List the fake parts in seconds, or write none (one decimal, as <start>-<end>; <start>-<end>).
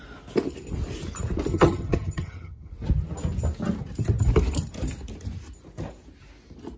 1.5-2.7